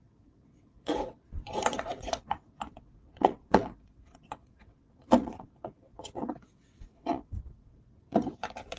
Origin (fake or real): fake